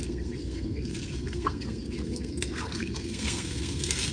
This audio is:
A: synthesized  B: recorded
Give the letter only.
A